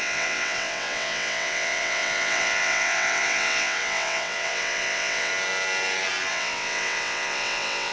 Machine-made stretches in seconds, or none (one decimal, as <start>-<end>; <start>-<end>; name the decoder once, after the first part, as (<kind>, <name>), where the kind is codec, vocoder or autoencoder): 0.0-5.3 (vocoder, WaveNeXt); 6.3-7.9